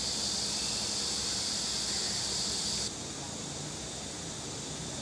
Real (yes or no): yes